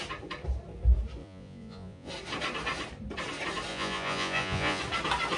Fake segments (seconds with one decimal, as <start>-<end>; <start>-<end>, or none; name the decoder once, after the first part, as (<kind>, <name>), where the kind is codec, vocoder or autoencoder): 1.2-2.1 (vocoder, Vocos); 3.7-4.8